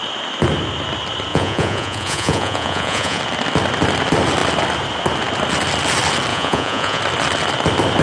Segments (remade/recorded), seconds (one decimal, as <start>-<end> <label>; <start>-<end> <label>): 0.0-1.3 recorded; 1.3-3.2 remade; 3.2-6.3 recorded; 6.3-7.0 remade; 7.0-8.0 recorded